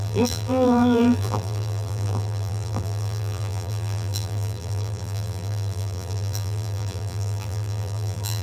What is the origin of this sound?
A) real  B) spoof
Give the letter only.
B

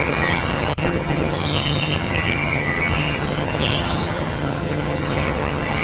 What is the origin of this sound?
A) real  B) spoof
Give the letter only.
B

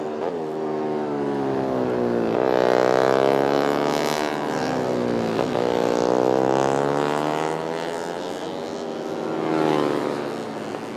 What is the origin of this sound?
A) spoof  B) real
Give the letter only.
B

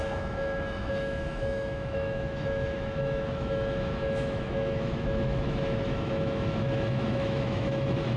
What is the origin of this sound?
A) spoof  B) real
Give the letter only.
A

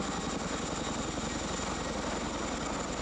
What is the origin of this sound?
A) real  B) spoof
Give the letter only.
A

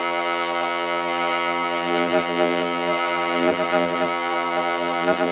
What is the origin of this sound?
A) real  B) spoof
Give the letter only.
B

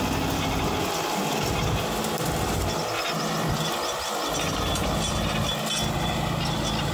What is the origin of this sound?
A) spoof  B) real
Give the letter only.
B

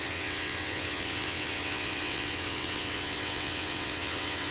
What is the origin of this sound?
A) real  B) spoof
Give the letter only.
B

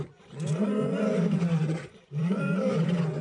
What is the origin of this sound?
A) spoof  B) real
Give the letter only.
A